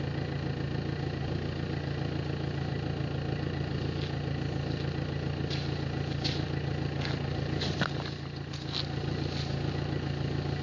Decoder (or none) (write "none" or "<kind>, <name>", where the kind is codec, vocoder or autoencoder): none